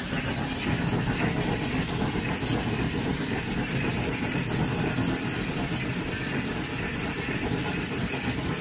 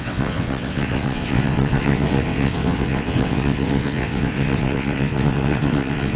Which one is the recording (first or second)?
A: first